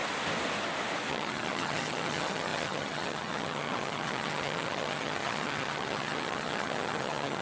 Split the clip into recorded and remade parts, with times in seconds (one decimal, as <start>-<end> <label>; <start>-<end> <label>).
0.0-1.1 recorded; 1.1-7.4 remade